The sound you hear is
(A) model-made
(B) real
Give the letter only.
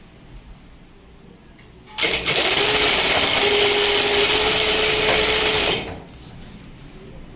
B